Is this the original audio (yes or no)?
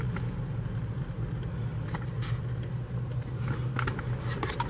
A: yes